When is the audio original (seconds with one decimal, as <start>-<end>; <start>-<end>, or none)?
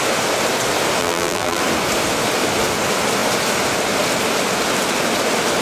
0.0-1.0; 1.6-5.6